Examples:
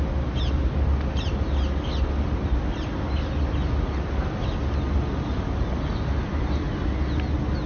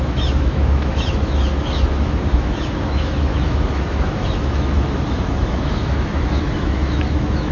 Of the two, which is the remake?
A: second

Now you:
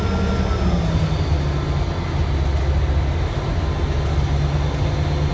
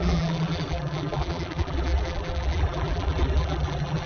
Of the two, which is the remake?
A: second